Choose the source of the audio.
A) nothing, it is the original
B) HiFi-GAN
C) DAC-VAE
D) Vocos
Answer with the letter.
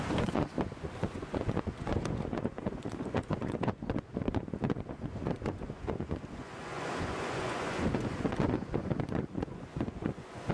D